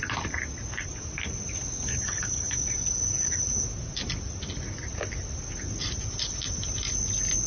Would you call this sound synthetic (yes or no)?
no